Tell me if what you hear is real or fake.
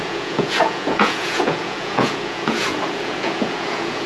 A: fake